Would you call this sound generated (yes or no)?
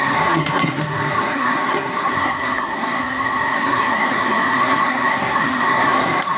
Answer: yes